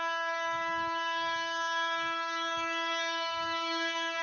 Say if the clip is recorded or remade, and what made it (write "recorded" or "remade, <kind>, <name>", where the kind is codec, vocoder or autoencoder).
remade, codec, DAC